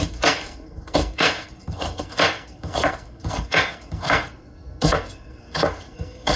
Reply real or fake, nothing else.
fake